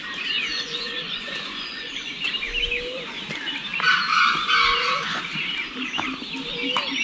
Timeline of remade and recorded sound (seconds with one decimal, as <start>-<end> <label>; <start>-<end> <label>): 0.0-0.5 recorded; 0.5-2.2 remade; 2.2-4.1 recorded; 4.1-5.2 remade; 5.2-7.0 recorded